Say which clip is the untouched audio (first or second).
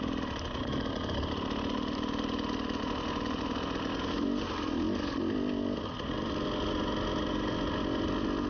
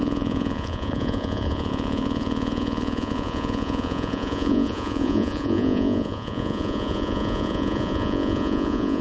first